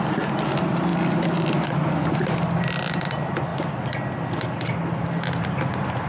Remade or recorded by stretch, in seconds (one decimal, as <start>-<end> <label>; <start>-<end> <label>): 0.0-6.1 recorded